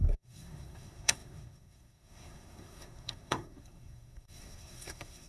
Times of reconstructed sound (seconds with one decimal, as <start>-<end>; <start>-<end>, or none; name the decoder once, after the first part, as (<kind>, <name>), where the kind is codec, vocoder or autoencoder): 0.0-5.3 (codec, SNAC)